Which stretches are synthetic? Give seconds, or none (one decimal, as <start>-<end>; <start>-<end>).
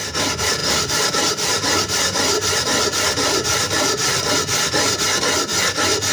0.6-4.3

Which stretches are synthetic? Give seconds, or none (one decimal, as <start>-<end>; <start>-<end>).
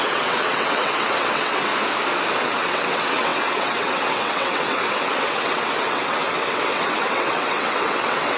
0.0-1.7; 2.4-8.4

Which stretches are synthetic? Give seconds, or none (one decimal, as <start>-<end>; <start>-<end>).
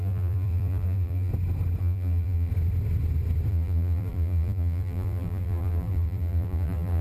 0.0-1.3; 1.8-2.5; 3.5-7.0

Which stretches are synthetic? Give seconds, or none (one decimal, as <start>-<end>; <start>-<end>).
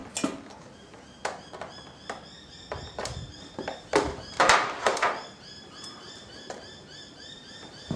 0.7-1.2; 2.5-8.0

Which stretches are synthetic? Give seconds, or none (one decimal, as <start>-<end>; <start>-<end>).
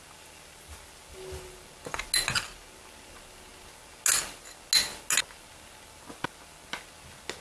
none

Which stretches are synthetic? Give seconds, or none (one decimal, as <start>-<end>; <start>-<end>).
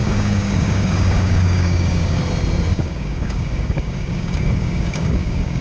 0.0-2.2; 2.7-5.6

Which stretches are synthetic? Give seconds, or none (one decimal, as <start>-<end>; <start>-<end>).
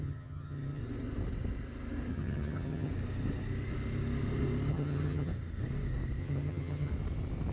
0.0-0.8; 2.1-2.9; 4.7-5.3; 6.2-6.9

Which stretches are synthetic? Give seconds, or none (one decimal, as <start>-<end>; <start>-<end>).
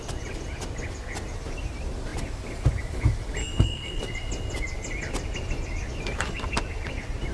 3.4-4.0